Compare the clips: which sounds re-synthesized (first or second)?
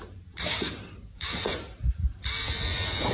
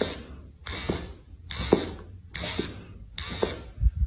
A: first